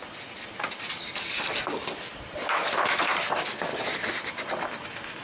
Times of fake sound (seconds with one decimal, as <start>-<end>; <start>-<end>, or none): 0.7-3.1; 4.1-5.2